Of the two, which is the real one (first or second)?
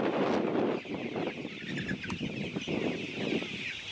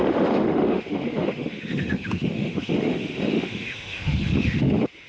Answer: first